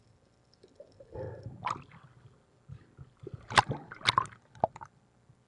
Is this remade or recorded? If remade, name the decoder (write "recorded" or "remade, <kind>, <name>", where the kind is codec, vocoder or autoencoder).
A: recorded